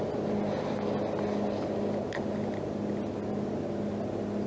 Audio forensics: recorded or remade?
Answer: recorded